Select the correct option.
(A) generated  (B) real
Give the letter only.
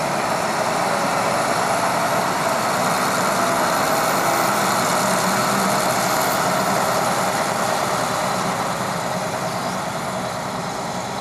B